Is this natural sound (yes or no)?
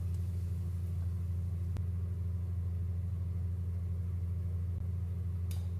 yes